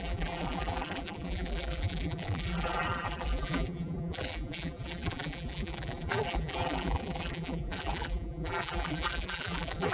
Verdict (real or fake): fake